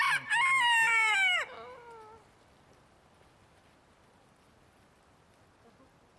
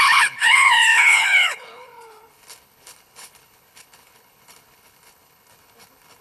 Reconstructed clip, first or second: second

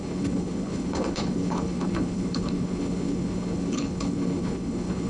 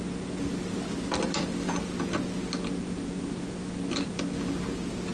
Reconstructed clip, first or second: first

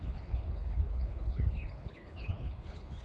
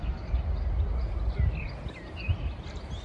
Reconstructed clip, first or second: first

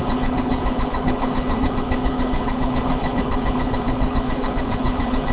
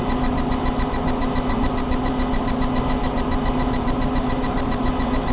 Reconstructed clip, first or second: first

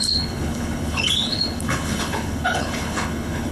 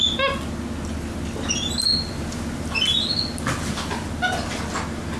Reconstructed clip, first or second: first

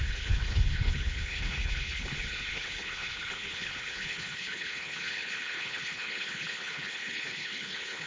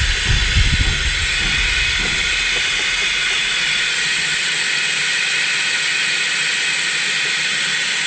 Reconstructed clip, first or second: first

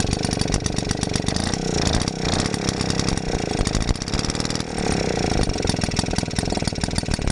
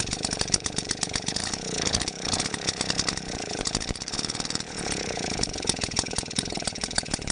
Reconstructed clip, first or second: second